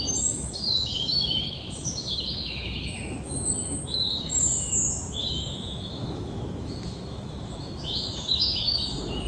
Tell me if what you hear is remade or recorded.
remade